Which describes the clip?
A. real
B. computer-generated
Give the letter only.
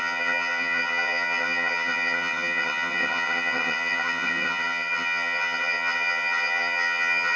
B